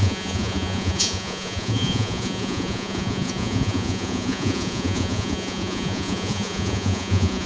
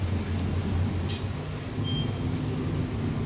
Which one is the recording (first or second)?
second